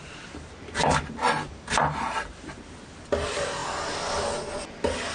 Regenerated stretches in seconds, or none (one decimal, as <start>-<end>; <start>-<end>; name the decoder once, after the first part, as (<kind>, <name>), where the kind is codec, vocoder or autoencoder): 0.0-1.0 (vocoder, BigVGAN v2); 1.8-2.6